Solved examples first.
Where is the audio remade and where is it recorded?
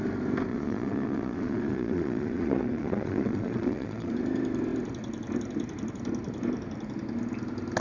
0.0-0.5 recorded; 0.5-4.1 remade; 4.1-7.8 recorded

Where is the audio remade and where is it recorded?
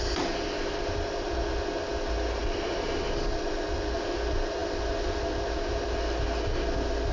0.0-7.1 recorded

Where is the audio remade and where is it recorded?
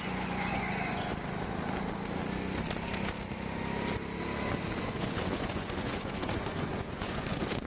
0.0-1.1 remade; 1.1-4.8 recorded; 4.8-7.7 remade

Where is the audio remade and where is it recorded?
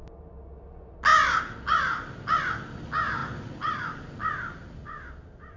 0.0-5.6 recorded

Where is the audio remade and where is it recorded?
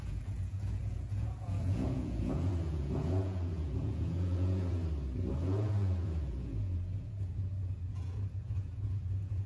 0.0-4.8 remade; 4.8-5.3 recorded; 5.3-9.5 remade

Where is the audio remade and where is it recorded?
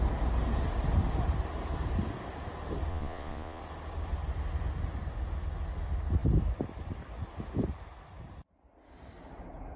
0.0-2.9 recorded; 2.9-3.6 remade; 3.6-9.8 recorded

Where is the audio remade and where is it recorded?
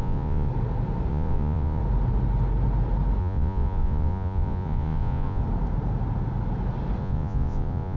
0.0-0.5 remade; 0.5-1.1 recorded; 1.1-1.8 remade; 1.8-3.2 recorded; 3.2-5.4 remade; 5.4-7.0 recorded; 7.0-8.0 remade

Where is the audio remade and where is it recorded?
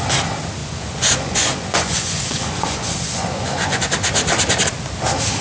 0.0-0.6 recorded; 0.6-3.8 remade; 3.8-5.4 recorded